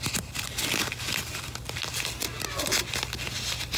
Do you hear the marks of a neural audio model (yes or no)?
no